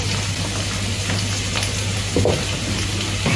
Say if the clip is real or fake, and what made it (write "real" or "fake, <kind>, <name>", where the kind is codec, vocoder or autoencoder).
real